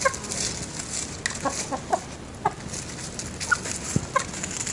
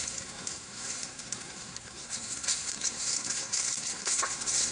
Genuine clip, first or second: first